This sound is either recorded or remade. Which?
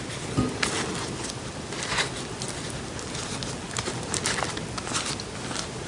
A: recorded